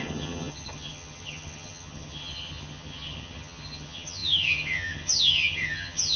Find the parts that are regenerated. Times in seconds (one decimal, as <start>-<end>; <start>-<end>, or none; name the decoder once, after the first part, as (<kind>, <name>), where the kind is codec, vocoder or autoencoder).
0.0-6.2 (vocoder, HiFi-GAN)